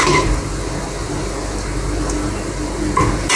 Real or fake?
real